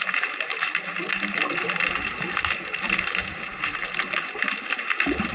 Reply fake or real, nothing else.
fake